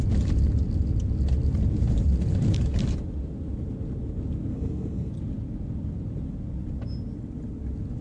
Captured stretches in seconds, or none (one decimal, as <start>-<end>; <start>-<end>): 0.0-4.5; 5.1-8.0

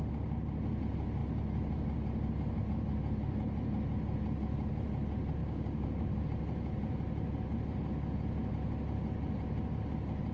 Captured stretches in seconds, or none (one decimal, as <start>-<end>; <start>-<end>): 0.0-5.4; 6.2-10.3

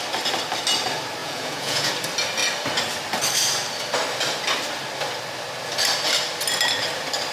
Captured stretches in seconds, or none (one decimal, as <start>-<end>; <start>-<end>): 0.0-1.2; 1.9-7.3

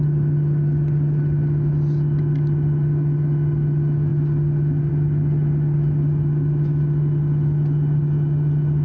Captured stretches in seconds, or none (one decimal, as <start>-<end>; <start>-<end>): 0.0-8.8

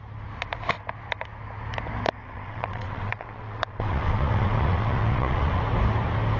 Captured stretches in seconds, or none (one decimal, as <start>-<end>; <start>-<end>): 0.0-2.2; 5.6-6.4

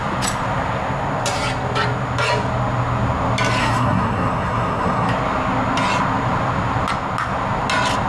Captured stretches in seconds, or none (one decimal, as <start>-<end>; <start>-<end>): 0.0-3.6; 5.1-8.1